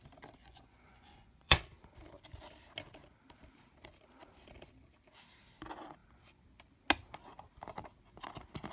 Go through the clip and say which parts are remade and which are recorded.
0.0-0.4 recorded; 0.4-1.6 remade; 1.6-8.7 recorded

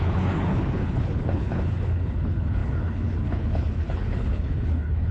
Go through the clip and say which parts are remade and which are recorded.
0.0-5.1 remade

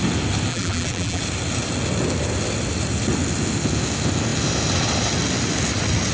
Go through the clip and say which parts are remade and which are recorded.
0.0-0.5 recorded; 0.5-1.2 remade; 1.2-6.1 recorded

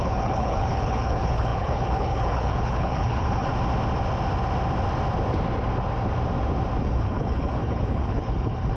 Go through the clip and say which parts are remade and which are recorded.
0.0-3.5 remade; 3.5-6.8 recorded; 6.8-8.8 remade

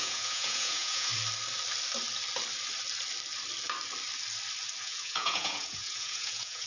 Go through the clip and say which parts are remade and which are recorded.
0.0-1.1 remade; 1.1-4.8 recorded; 4.8-6.7 remade

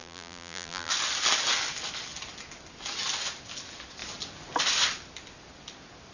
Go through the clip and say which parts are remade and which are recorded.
0.0-0.9 remade; 0.9-6.1 recorded

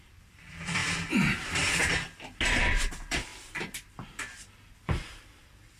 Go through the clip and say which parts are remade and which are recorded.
0.0-0.8 remade; 0.8-2.6 recorded; 2.6-3.3 remade; 3.3-3.9 recorded; 3.9-5.8 remade

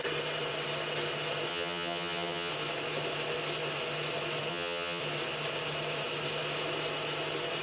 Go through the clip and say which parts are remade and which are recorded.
0.0-1.5 recorded; 1.5-2.5 remade; 2.5-4.5 recorded; 4.5-5.0 remade; 5.0-7.6 recorded